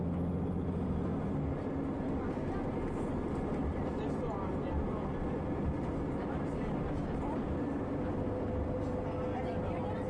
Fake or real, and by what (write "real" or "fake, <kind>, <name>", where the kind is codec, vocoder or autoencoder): real